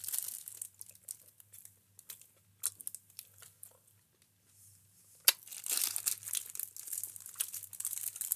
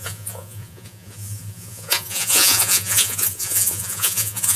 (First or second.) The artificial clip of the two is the second